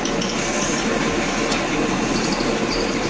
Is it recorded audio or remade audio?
recorded